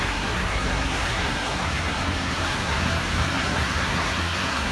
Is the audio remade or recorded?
remade